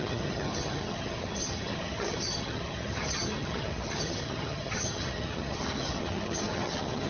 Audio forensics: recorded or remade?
remade